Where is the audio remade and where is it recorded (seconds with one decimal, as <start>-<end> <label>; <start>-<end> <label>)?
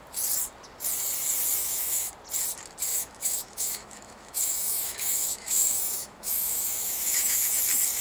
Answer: 0.0-1.6 recorded; 1.6-2.1 remade; 2.1-2.9 recorded; 2.9-7.6 remade; 7.6-8.0 recorded